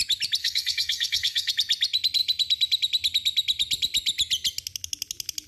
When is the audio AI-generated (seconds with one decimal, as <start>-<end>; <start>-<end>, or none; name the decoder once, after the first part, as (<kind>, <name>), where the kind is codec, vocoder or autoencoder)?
0.4-1.5 (codec, SNAC)